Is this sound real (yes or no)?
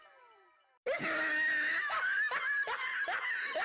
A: yes